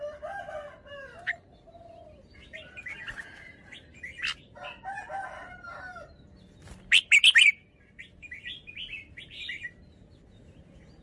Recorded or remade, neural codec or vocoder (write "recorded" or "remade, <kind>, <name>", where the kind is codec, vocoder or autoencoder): recorded